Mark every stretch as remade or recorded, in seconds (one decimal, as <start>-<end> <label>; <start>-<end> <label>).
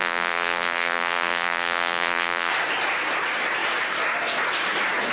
0.0-2.5 remade; 2.5-5.1 recorded